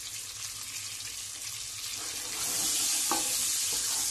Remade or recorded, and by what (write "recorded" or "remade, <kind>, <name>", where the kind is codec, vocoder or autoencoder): recorded